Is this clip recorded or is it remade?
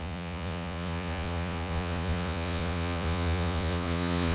remade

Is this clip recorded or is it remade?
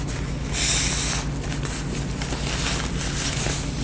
recorded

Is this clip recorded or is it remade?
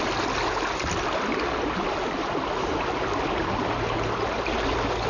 recorded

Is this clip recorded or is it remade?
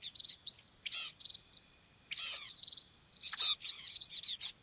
recorded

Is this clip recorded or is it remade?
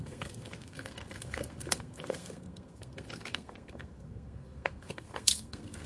remade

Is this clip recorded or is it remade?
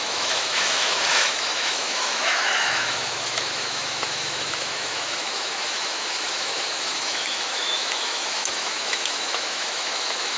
remade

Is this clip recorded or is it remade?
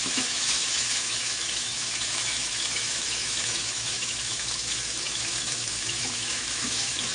remade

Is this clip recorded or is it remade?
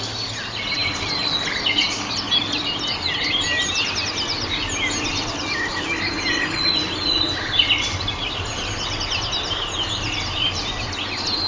recorded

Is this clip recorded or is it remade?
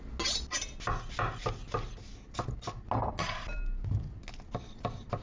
recorded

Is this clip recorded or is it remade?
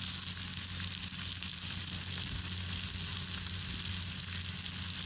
recorded